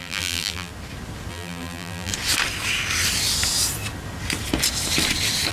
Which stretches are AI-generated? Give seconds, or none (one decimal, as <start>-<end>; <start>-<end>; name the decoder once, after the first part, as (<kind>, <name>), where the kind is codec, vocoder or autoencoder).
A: 0.0-0.7 (vocoder, BigVGAN v2); 1.3-2.1